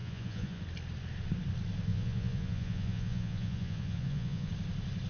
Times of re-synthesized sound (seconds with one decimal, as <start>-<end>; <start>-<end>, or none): 0.0-0.6; 1.9-4.5